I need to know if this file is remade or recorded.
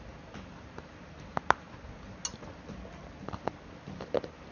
recorded